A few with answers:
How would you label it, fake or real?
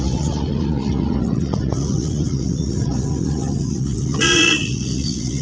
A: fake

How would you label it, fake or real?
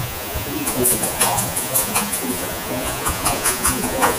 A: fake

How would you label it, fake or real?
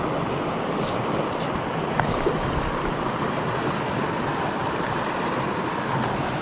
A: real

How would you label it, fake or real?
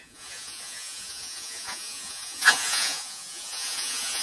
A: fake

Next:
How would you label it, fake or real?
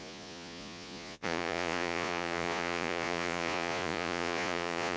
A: fake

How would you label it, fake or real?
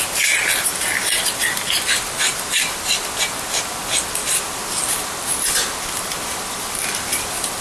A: real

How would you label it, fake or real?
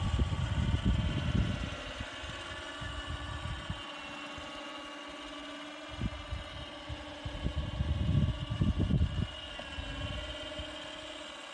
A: real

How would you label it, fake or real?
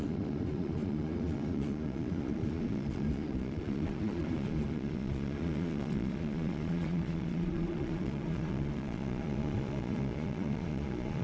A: fake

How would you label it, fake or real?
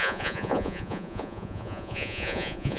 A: fake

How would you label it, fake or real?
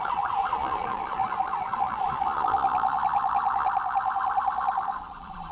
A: fake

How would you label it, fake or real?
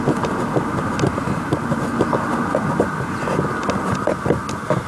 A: real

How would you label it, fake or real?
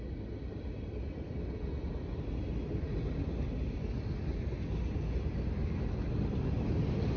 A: real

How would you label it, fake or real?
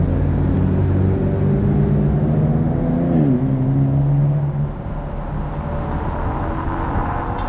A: real